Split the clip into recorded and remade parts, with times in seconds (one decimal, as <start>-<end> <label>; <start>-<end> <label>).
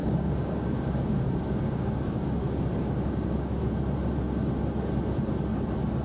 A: 0.0-3.6 remade; 3.6-6.0 recorded